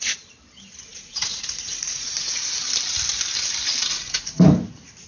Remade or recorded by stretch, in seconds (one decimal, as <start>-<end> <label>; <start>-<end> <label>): 0.0-0.9 recorded; 0.9-2.4 remade; 2.4-3.9 recorded; 3.9-4.4 remade; 4.4-5.1 recorded